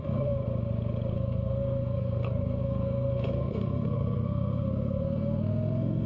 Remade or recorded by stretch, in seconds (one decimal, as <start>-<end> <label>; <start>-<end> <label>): 0.0-0.4 remade; 0.4-1.1 recorded; 1.1-6.1 remade